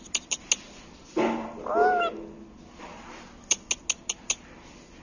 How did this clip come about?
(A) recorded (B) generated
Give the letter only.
A